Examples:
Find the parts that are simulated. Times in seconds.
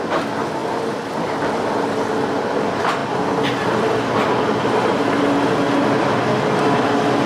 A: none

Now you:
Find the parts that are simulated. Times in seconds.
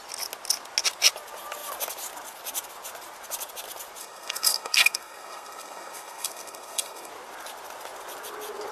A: 4.0-7.1